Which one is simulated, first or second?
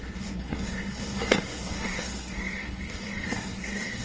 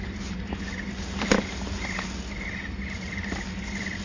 first